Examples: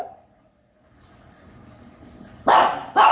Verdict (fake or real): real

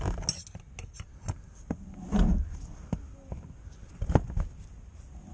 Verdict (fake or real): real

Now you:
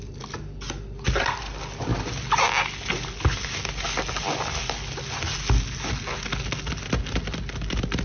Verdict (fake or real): real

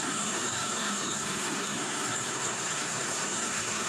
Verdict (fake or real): fake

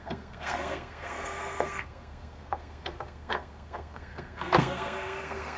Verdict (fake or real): fake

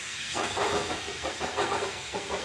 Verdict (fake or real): fake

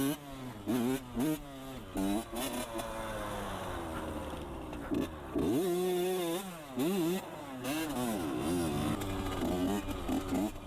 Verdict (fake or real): real